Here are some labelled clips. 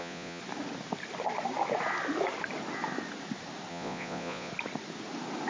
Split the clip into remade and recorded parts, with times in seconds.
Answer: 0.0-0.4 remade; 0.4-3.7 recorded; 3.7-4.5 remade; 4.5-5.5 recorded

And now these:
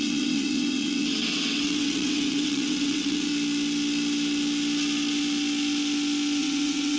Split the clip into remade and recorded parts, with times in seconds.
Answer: 0.0-3.3 remade; 3.3-6.4 recorded; 6.4-7.0 remade

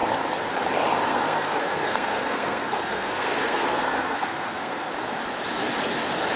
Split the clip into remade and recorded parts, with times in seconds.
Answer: 0.0-1.1 recorded; 1.1-4.9 remade; 4.9-6.4 recorded

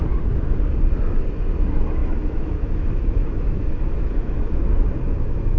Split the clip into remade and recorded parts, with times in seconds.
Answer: 0.0-2.0 recorded; 2.0-5.6 remade

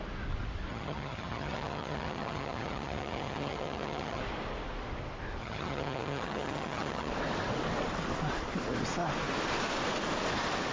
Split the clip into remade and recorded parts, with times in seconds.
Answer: 0.0-0.7 recorded; 0.7-4.2 remade; 4.2-5.4 recorded; 5.4-7.1 remade; 7.1-10.7 recorded

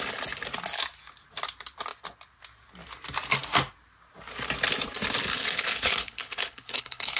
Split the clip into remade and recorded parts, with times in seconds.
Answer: 0.0-5.3 recorded; 5.3-7.2 remade

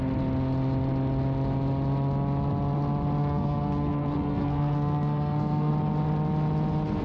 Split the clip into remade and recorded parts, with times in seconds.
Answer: 0.0-3.2 recorded; 3.2-5.7 remade; 5.7-7.0 recorded